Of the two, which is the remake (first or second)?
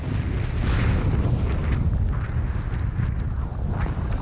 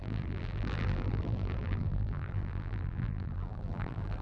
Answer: second